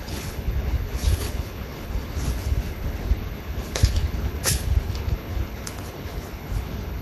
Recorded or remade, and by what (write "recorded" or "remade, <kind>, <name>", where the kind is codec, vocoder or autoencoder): remade, codec, HILCodec